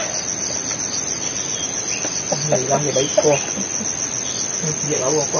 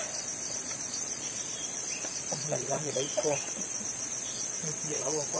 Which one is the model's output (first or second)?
second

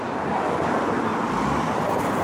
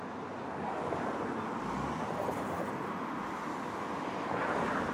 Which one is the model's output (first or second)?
first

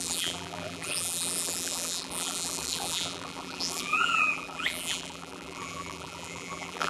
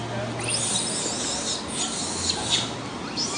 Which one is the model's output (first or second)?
first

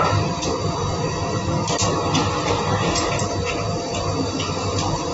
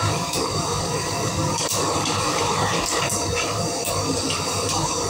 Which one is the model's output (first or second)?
second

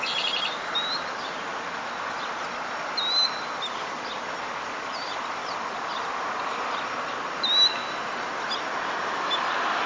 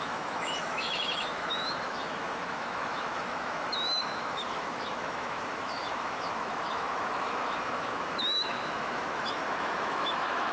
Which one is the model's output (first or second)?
second